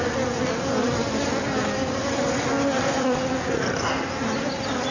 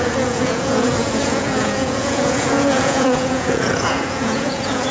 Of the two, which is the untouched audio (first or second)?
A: first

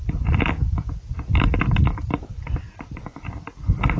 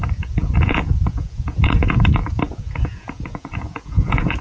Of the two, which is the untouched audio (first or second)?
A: first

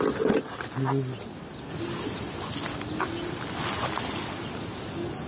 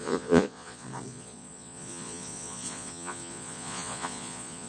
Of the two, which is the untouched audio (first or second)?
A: first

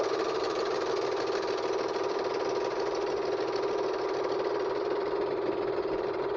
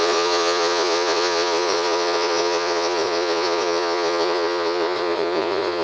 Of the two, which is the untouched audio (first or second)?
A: first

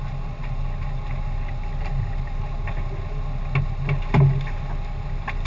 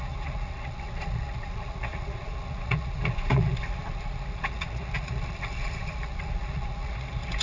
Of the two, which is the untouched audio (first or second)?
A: first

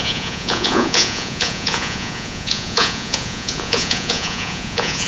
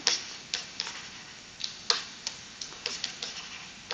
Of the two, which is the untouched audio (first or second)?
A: second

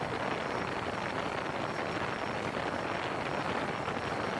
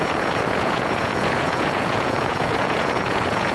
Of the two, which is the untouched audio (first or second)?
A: first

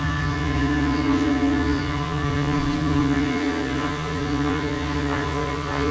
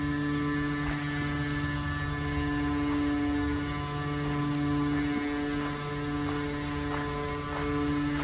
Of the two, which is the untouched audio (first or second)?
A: second